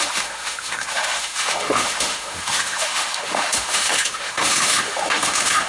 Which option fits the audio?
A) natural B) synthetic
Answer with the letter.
B